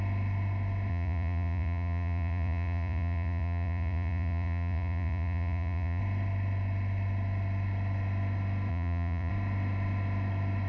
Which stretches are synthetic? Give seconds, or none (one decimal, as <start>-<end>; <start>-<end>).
0.9-6.0; 8.7-9.3